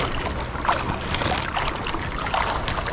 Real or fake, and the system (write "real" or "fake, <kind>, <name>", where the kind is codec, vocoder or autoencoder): real